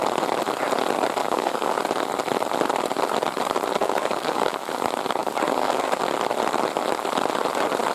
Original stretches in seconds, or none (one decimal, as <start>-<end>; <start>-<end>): 0.0-1.2; 1.8-3.8; 4.7-5.2; 6.0-7.9